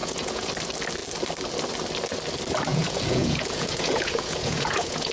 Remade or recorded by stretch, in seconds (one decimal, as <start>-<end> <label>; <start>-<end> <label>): 0.0-0.5 remade; 0.5-2.7 recorded; 2.7-5.1 remade